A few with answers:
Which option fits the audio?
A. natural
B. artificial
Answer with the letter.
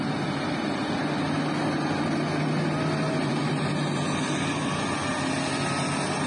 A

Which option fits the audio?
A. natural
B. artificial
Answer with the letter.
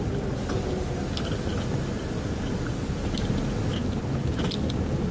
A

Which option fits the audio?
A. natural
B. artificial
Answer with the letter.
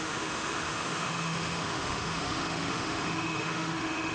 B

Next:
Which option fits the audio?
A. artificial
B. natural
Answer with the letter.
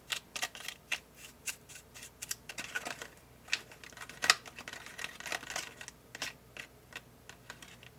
B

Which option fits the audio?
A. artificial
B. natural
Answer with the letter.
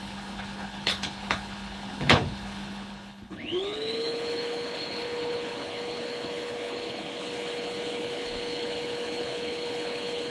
A